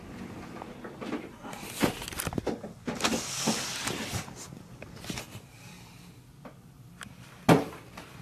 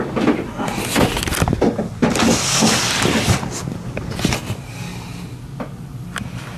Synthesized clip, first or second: first